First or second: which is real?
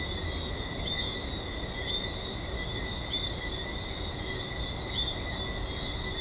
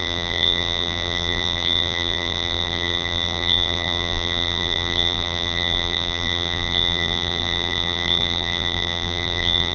first